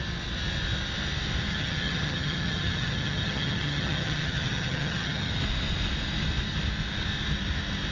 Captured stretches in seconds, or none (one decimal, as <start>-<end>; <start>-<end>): 0.0-1.5; 5.3-7.9